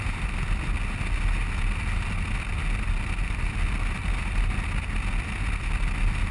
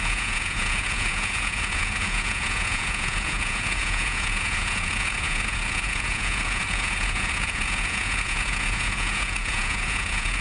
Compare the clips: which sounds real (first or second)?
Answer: first